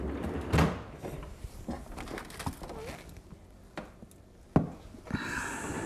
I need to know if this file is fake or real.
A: real